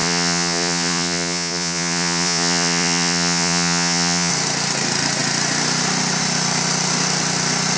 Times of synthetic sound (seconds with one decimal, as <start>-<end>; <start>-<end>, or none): 0.0-4.3